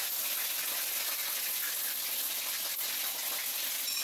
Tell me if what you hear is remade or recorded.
recorded